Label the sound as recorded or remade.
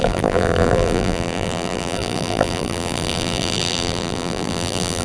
remade